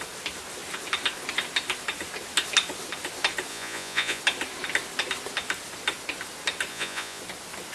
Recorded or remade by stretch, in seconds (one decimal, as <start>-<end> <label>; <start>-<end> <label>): 0.0-3.5 recorded; 3.5-4.2 remade; 4.2-6.7 recorded; 6.7-7.2 remade; 7.2-7.7 recorded